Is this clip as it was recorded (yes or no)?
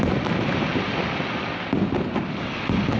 yes